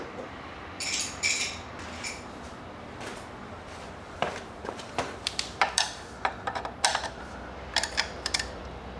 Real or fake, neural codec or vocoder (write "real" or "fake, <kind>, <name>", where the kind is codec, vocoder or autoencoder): fake, vocoder, BigVGAN v2